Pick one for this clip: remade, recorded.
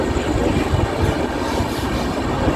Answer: recorded